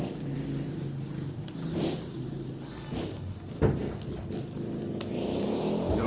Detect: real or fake real